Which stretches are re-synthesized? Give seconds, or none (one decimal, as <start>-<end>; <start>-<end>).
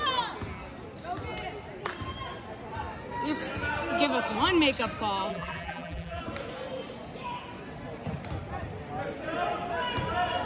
5.3-6.2